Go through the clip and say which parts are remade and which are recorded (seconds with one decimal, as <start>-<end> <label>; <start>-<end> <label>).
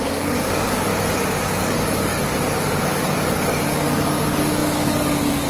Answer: 0.0-0.9 remade; 0.9-1.6 recorded; 1.6-2.1 remade; 2.1-2.6 recorded; 2.6-5.5 remade